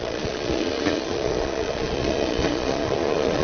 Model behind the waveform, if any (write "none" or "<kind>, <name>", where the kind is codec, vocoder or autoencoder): vocoder, Vocos